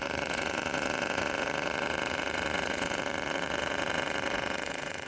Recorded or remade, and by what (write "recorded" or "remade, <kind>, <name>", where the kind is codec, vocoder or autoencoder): remade, vocoder, Vocos